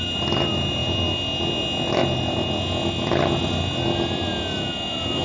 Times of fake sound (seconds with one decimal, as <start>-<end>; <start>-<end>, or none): none